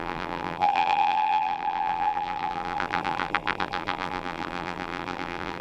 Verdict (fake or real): fake